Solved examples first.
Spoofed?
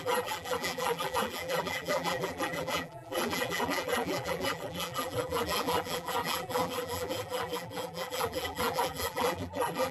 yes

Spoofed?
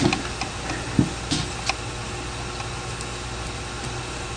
no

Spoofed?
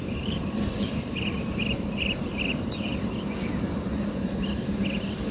yes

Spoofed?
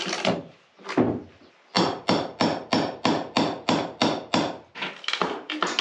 no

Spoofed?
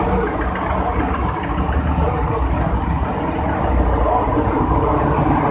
no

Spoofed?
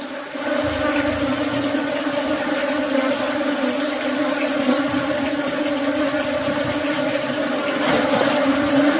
yes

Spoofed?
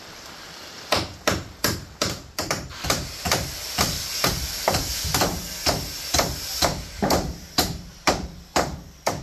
yes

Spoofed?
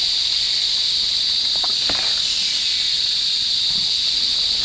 no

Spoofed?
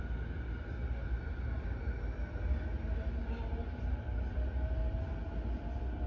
no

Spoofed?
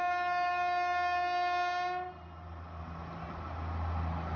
no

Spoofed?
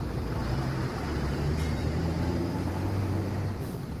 yes